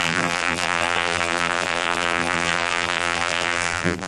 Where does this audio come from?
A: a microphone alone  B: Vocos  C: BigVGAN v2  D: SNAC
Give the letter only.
C